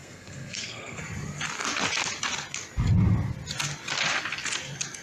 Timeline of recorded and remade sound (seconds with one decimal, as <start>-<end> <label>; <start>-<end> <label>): 0.0-1.0 remade; 1.0-5.0 recorded